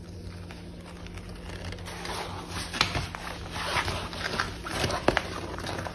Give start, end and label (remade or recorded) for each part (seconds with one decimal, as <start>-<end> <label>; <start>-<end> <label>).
0.0-5.9 recorded